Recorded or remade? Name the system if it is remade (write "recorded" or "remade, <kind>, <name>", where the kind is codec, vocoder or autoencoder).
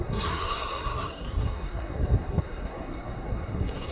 remade, codec, SNAC